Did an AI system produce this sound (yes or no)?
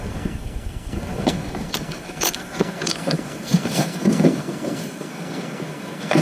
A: yes